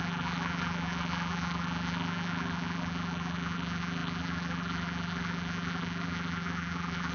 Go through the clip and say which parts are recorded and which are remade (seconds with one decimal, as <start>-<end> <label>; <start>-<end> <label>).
0.0-7.1 remade